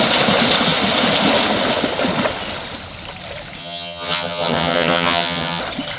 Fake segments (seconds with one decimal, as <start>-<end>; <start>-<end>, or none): 3.6-5.6